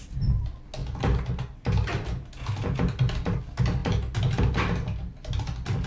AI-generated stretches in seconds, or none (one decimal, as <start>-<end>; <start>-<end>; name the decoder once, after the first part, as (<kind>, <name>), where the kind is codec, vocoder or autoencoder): none